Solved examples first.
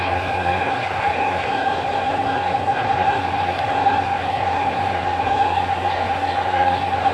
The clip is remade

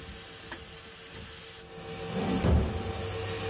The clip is recorded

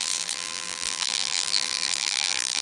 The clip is remade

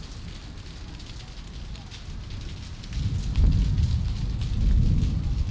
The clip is recorded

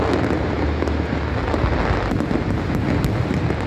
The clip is recorded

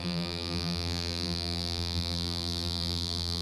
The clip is remade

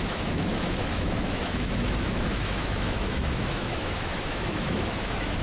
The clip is remade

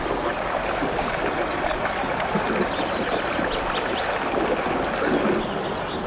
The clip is recorded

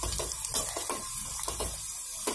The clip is recorded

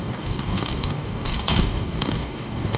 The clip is remade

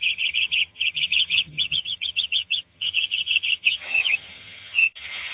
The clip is remade